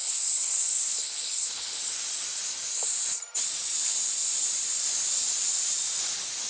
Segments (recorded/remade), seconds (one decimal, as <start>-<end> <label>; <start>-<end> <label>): 0.0-1.8 remade; 1.8-6.5 recorded